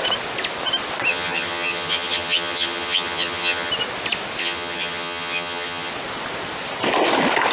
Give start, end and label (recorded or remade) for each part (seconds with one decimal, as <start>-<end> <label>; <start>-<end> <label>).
0.0-1.1 recorded; 1.1-3.7 remade; 3.7-4.4 recorded; 4.4-5.9 remade; 5.9-7.5 recorded